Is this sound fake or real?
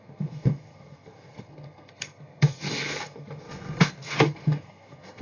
fake